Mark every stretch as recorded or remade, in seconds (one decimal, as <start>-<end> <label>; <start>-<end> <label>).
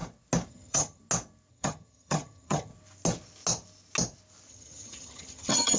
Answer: 0.0-0.5 recorded; 0.5-1.0 remade; 1.0-1.5 recorded; 1.5-2.7 remade; 2.7-4.5 recorded; 4.5-5.8 remade